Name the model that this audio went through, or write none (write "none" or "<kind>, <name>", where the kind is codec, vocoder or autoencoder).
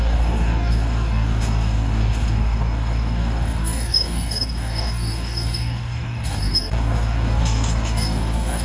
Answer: codec, DAC